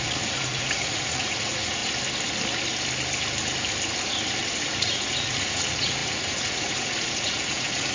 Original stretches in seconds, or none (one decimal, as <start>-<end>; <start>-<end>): 1.8-4.5